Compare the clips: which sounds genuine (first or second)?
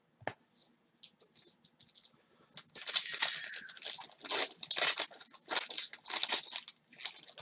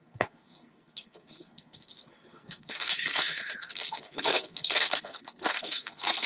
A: first